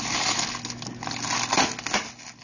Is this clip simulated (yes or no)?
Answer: no